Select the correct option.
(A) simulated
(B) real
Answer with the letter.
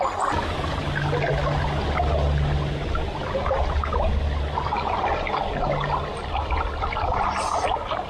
B